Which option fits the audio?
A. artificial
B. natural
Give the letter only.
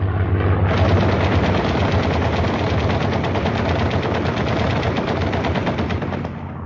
B